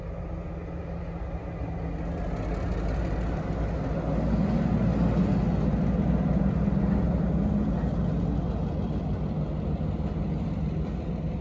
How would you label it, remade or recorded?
recorded